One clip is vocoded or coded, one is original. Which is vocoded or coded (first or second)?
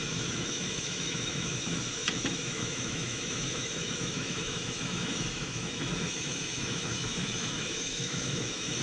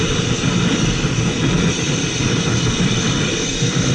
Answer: first